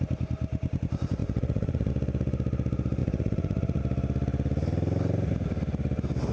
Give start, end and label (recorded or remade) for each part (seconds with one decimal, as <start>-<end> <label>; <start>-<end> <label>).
0.0-1.2 recorded; 1.2-1.9 remade; 1.9-3.0 recorded; 3.0-3.8 remade; 3.8-6.3 recorded